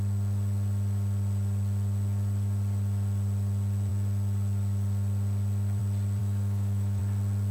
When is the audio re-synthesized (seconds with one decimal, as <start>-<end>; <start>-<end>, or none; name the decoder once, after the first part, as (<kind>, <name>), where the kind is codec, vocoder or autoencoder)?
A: 6.2-7.0 (autoencoder, DAC-VAE)